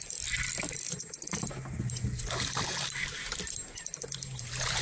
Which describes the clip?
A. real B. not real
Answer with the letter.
A